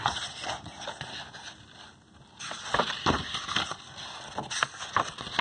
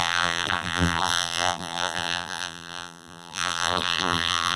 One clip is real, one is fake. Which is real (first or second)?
first